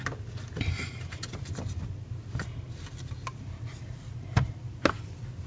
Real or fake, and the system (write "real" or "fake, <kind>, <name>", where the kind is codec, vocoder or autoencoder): real